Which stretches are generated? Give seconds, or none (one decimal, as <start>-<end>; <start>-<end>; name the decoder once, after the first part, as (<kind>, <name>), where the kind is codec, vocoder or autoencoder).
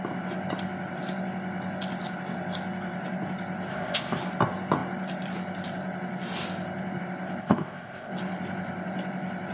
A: 3.7-4.2 (codec, ZipCodec); 7.4-8.1